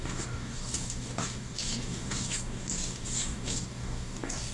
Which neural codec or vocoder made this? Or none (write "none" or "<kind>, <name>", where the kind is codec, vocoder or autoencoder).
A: codec, DAC